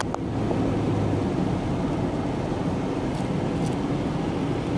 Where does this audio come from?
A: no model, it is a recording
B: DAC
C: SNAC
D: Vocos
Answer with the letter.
A